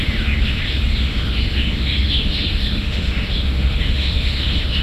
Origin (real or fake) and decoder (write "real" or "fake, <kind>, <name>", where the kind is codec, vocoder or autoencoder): fake, autoencoder, DAC-VAE